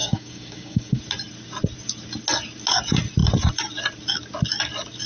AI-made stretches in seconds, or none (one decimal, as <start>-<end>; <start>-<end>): 0.0-1.0